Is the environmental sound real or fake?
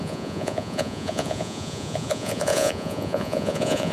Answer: fake